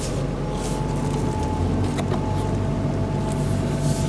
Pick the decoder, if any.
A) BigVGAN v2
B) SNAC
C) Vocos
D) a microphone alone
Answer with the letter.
D